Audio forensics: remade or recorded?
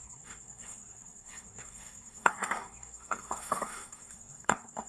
remade